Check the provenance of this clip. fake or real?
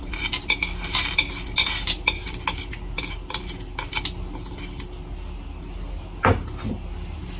real